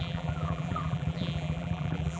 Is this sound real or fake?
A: fake